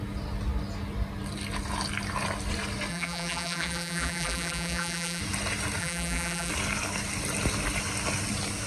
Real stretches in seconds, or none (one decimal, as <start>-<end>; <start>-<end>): 0.0-2.9; 5.2-5.8; 6.5-8.7